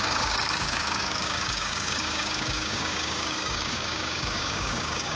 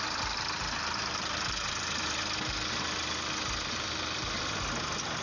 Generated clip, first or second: first